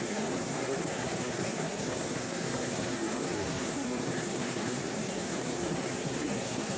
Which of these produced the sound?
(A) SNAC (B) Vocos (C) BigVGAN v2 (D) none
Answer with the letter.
A